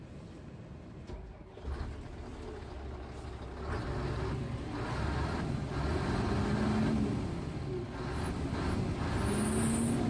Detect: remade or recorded recorded